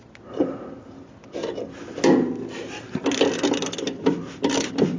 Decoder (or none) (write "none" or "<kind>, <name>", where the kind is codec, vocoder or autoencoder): none